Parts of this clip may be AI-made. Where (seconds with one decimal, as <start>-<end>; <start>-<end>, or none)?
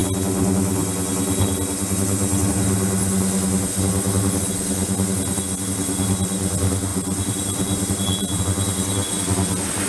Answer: 6.9-8.4